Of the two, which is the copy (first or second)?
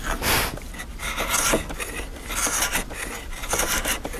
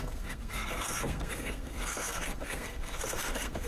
second